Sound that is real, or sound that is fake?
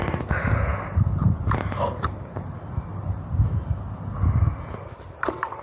real